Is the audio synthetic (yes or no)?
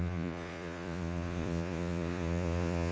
yes